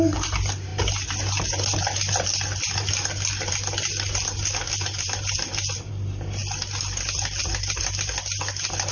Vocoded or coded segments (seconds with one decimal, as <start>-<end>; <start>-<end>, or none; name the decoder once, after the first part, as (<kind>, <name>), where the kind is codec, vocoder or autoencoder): none